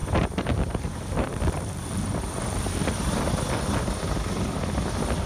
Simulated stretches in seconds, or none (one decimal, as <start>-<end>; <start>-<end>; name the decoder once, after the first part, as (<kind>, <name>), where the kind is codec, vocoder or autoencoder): 0.0-3.2 (vocoder, BigVGAN v2)